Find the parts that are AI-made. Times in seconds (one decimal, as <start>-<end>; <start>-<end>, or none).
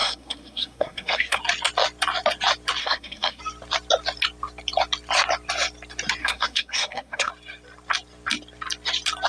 0.0-1.4; 2.8-3.4; 6.2-7.3